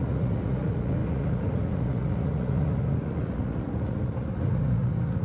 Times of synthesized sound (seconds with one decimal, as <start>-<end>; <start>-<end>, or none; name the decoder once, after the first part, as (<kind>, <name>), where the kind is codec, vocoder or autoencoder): 0.0-5.2 (vocoder, Vocos)